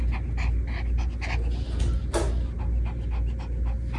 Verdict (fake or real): real